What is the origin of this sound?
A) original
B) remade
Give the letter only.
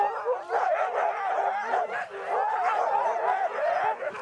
A